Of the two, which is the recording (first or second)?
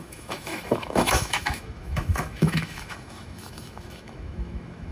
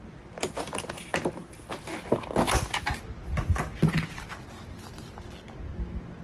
second